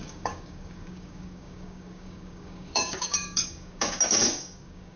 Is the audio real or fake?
fake